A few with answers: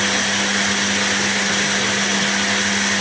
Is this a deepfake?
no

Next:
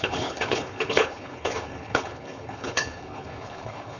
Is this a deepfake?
yes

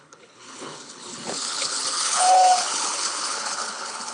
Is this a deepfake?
yes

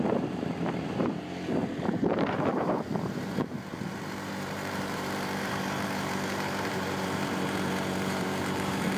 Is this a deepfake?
yes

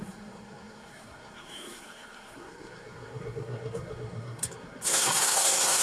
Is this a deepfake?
yes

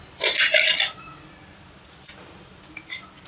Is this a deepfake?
no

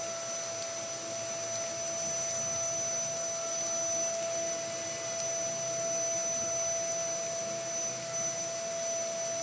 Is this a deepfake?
no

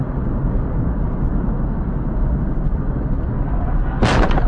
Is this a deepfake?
no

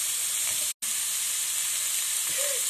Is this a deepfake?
no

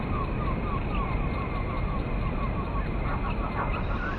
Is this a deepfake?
no